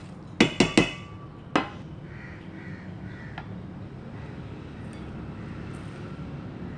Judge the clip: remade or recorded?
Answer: recorded